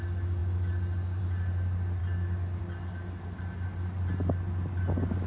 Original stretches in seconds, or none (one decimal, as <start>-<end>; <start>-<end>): 0.0-5.3